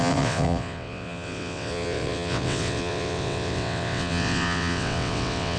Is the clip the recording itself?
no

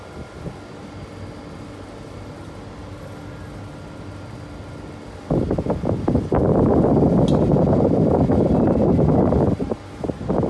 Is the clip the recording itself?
yes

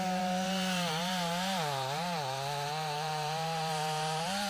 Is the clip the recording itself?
no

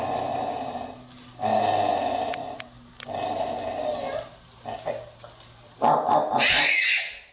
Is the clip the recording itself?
yes